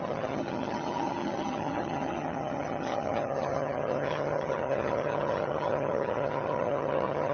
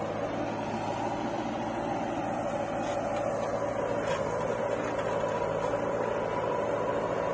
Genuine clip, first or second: second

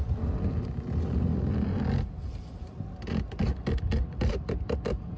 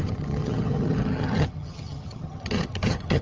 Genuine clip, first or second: first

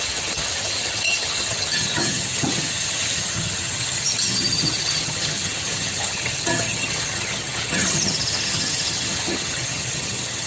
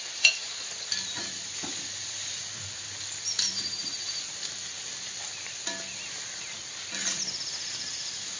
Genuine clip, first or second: second